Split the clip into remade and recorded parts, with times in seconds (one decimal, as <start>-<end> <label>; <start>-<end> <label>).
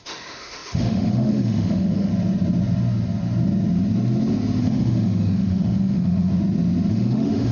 0.0-2.1 remade; 2.1-4.6 recorded; 4.6-6.3 remade; 6.3-6.9 recorded; 6.9-7.5 remade